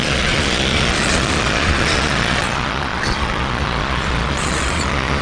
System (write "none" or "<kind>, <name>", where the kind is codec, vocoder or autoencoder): vocoder, Vocos